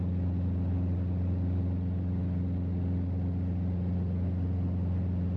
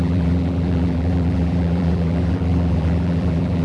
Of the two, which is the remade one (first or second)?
second